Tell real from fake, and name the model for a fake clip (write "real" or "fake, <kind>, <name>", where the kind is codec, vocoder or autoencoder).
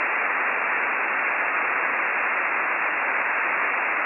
real